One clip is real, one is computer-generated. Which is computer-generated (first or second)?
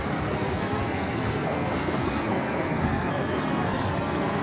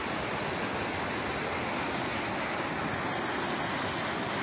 first